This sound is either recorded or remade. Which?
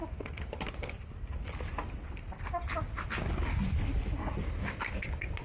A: recorded